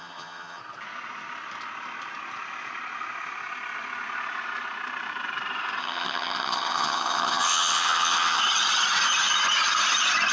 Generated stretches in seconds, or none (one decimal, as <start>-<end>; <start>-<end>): 0.0-0.6; 5.8-8.4